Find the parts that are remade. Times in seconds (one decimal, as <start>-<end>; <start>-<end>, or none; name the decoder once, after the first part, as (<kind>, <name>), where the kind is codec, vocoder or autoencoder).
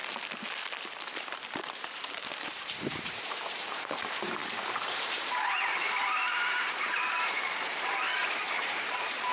1.9-9.3 (vocoder, BigVGAN v2)